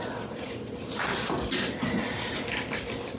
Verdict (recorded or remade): recorded